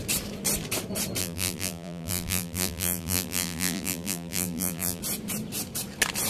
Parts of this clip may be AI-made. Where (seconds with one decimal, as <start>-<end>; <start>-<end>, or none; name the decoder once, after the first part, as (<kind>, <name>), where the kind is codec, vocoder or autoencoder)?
1.2-5.0 (vocoder, BigVGAN v2)